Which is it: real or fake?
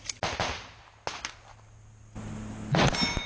real